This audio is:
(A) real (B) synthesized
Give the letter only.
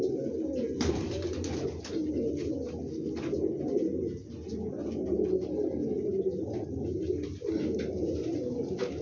A